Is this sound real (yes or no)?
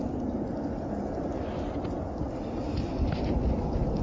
yes